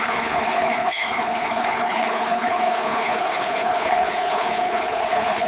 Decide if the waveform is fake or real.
fake